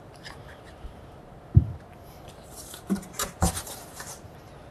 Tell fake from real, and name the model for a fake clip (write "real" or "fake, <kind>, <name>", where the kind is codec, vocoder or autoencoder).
fake, vocoder, BigVGAN v2